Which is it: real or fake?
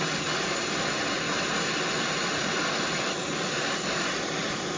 real